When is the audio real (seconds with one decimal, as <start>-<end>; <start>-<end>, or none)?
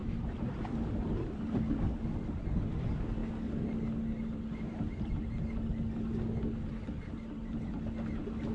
1.4-8.5